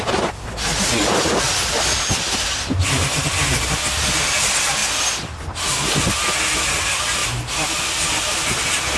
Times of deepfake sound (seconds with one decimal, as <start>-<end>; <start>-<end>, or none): none